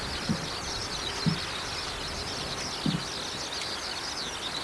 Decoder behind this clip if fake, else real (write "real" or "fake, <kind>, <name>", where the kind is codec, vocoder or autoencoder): real